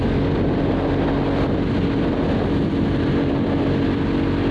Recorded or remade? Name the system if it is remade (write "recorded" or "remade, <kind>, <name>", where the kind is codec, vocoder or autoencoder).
recorded